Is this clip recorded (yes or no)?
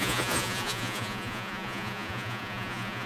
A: no